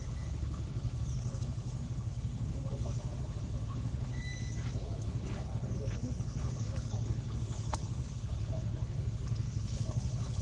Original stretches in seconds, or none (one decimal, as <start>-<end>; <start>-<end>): 4.2-4.8